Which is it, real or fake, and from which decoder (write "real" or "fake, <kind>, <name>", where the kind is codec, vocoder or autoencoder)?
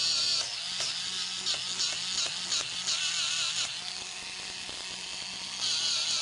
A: real